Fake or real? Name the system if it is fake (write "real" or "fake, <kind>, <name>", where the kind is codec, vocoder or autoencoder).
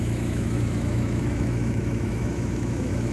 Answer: fake, autoencoder, DAC-VAE